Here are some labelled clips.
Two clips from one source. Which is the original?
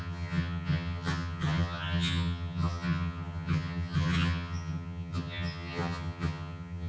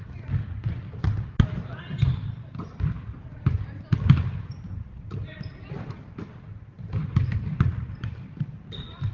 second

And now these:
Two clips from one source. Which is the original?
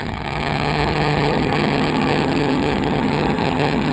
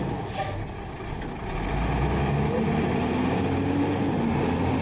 second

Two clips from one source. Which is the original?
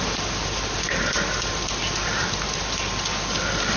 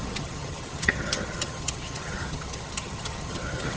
first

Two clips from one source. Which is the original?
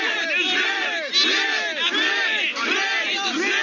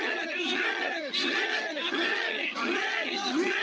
first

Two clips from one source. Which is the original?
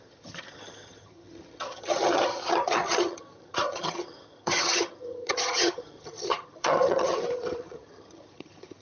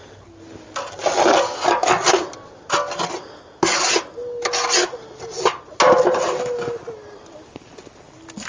second